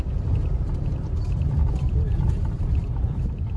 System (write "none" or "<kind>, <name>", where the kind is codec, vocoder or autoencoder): none